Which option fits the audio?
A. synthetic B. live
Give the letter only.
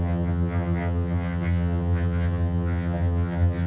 A